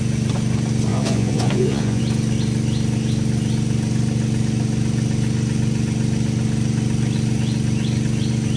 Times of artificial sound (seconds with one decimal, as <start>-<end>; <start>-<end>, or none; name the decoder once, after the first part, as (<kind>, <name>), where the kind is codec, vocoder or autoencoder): 0.9-2.0 (vocoder, Vocos)

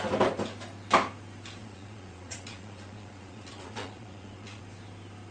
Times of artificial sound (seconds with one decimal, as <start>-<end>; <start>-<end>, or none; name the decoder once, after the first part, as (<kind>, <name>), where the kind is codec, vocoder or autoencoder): 1.6-4.6 (vocoder, Vocos)

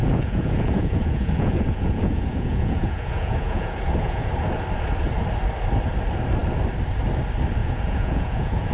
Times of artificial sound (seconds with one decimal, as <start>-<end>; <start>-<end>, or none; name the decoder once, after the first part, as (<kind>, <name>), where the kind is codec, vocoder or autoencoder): 0.0-4.3 (vocoder, Vocos); 7.6-8.7

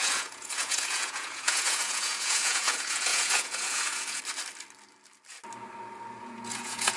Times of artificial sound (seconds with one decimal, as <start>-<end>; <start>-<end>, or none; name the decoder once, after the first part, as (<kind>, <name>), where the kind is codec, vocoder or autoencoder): 0.0-4.2 (vocoder, Vocos); 6.2-7.0